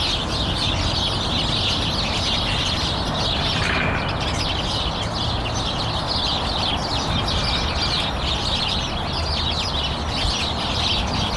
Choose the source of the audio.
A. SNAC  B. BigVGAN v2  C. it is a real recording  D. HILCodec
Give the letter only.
C